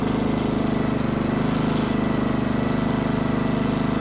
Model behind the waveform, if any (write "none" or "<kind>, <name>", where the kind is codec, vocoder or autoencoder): none